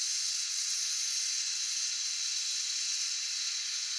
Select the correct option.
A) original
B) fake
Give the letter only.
B